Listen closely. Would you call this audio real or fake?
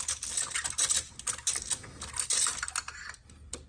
real